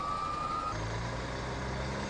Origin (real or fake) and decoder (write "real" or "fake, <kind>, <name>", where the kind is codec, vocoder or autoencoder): real